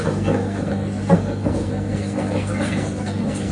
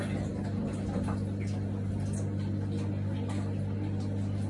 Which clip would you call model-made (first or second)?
first